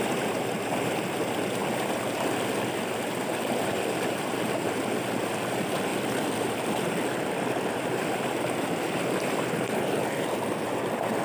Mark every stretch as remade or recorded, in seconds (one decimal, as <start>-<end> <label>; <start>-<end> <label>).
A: 0.0-11.2 recorded